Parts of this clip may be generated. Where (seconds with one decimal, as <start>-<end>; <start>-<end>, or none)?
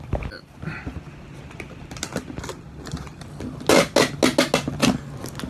none